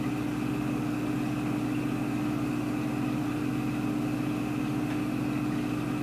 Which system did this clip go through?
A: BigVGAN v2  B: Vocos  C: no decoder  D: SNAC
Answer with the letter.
C